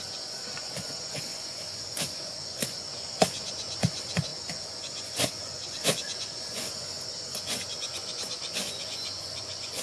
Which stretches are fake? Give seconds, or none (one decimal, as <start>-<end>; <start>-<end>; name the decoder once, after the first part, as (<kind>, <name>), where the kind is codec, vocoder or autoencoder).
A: 0.0-9.8 (vocoder, Vocos)